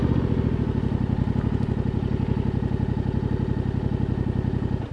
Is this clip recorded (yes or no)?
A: yes